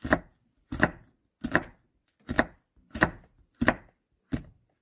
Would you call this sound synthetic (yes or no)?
no